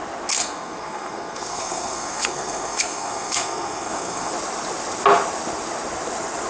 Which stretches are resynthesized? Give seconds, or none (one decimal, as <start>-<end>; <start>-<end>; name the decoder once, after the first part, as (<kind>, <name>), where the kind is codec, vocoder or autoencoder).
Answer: 0.4-4.3 (codec, SNAC)